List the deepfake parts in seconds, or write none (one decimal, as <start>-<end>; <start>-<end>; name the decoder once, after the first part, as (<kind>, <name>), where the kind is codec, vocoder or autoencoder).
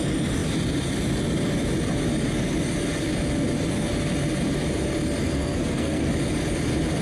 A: 5.2-6.1 (codec, SNAC)